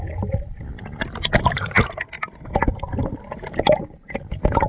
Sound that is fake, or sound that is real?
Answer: real